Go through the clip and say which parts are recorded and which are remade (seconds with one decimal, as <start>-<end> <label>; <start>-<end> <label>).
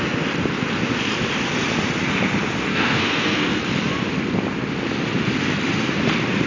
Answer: 0.0-2.7 recorded; 2.7-3.6 remade; 3.6-6.5 recorded